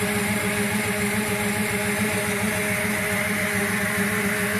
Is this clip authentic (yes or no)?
yes